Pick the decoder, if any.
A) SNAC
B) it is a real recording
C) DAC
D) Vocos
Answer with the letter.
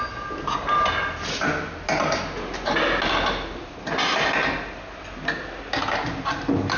B